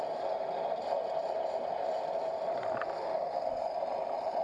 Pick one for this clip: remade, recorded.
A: recorded